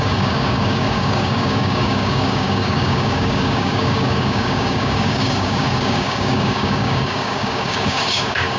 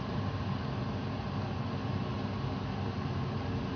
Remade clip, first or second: first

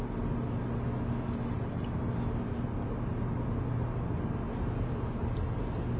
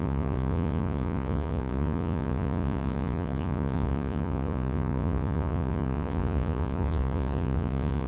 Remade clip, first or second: second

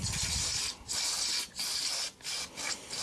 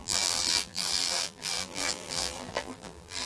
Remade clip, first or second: second